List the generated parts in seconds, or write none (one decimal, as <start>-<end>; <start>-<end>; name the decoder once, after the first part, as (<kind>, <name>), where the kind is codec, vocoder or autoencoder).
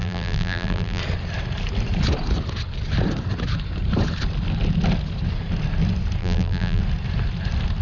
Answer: 0.0-1.0 (vocoder, BigVGAN v2); 6.2-6.8